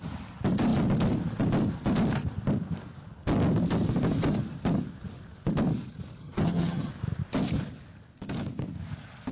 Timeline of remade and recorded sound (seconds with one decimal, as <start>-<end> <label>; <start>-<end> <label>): 0.0-6.2 recorded; 6.2-6.9 remade; 6.9-9.3 recorded